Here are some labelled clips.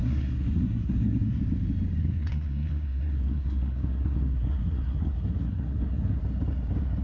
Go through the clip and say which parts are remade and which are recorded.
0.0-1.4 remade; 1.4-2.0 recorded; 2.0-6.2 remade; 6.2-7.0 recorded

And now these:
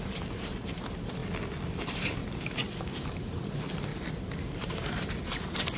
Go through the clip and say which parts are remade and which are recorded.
0.0-1.2 remade; 1.2-1.8 recorded; 1.8-3.9 remade; 3.9-4.5 recorded; 4.5-5.8 remade

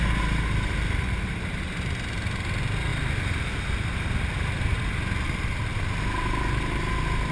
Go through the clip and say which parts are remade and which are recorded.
0.0-7.3 recorded

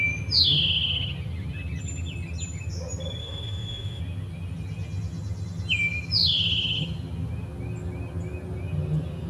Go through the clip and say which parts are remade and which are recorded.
0.0-3.2 recorded; 3.2-4.0 remade; 4.0-9.3 recorded

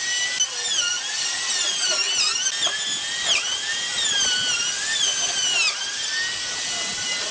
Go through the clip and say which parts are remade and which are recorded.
0.0-7.3 recorded